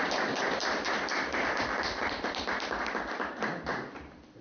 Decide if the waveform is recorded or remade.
remade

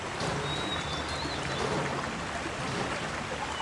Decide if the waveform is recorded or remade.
recorded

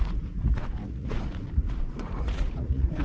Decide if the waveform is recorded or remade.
remade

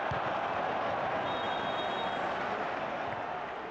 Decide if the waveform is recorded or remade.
recorded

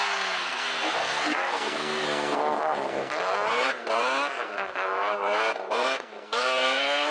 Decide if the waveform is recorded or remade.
remade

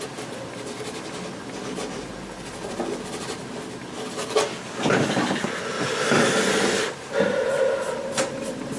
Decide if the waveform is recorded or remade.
recorded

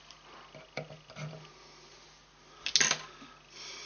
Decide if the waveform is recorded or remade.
recorded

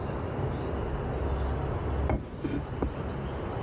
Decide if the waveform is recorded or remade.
recorded